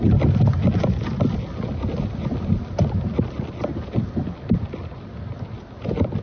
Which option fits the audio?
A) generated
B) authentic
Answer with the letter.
B